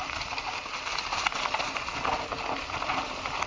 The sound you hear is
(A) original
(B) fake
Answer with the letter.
A